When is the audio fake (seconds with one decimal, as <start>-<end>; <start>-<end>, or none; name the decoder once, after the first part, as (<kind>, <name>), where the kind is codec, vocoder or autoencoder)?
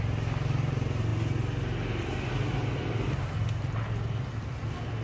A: none